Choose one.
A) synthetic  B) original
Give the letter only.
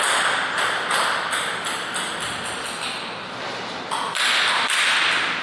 B